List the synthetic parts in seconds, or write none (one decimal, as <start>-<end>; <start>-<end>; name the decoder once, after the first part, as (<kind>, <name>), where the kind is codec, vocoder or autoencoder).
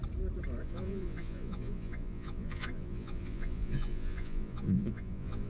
0.6-5.5 (vocoder, Vocos)